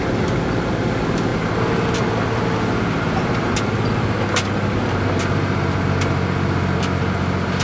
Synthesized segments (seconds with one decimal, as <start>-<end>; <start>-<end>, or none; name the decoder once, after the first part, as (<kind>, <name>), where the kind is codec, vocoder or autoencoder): none